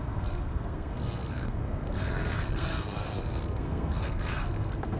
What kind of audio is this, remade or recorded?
remade